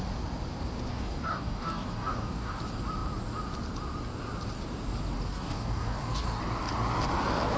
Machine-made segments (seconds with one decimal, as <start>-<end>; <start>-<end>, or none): 0.9-2.6; 5.3-6.4